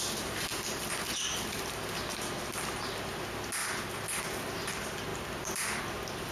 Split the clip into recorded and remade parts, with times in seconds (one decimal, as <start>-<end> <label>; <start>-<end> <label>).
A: 0.0-6.3 recorded